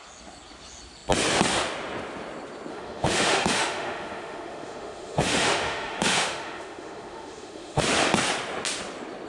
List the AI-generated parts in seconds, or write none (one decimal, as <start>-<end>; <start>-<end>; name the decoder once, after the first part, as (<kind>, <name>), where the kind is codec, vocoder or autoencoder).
2.7-7.8 (autoencoder, DAC-VAE)